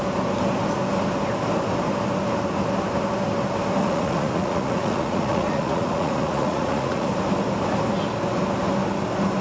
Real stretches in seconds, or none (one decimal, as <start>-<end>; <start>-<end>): 0.0-3.8; 7.1-9.4

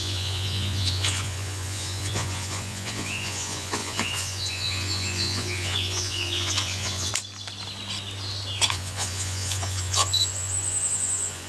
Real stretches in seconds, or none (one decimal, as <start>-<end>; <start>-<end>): 7.1-8.7

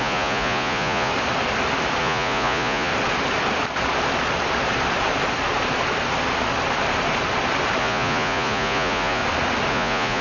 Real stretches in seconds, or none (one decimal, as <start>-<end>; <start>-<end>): 1.1-2.0; 2.9-7.8; 9.2-9.7

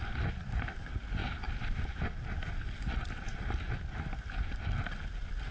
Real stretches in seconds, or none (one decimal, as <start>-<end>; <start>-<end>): 0.0-5.5

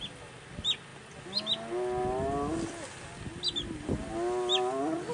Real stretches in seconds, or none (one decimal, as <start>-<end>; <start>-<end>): 0.0-5.1

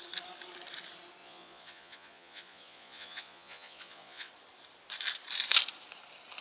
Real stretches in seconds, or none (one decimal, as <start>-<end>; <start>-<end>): 0.0-1.2; 4.3-6.4